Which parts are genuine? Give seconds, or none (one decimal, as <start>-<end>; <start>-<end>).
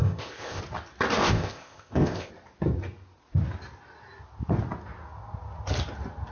0.6-1.2; 2.3-6.3